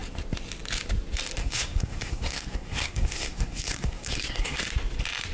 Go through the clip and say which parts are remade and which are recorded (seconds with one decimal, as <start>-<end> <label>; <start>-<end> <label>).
0.0-1.4 recorded; 1.4-4.6 remade; 4.6-5.3 recorded